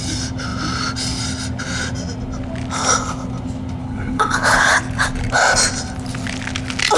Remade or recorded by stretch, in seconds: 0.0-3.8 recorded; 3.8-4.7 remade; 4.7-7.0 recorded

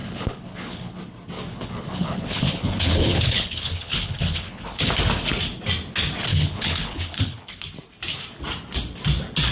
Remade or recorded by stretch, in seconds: 0.0-1.0 remade; 1.0-1.5 recorded; 1.5-4.9 remade; 4.9-6.3 recorded; 6.3-7.6 remade; 7.6-9.5 recorded

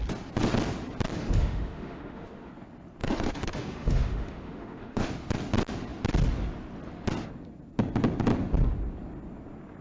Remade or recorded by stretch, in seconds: 0.0-1.2 recorded; 1.2-2.5 remade; 2.5-3.0 recorded; 3.0-5.1 remade; 5.1-9.8 recorded

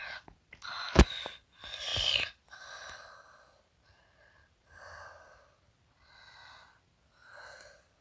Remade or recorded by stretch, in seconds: 0.0-8.0 recorded

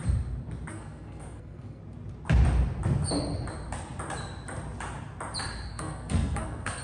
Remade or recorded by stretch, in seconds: 0.0-0.7 recorded; 0.7-1.8 remade; 1.8-5.7 recorded; 5.7-6.8 remade

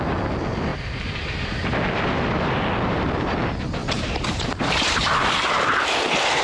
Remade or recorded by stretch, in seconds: 0.0-0.7 recorded; 0.7-1.5 remade; 1.5-3.8 recorded; 3.8-4.5 remade; 4.5-6.4 recorded

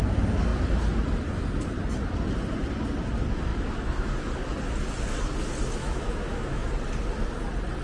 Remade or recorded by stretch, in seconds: 0.0-3.5 recorded; 3.5-4.1 remade; 4.1-5.8 recorded; 5.8-6.7 remade; 6.7-7.8 recorded